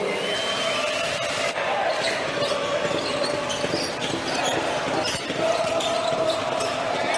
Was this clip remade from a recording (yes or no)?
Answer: no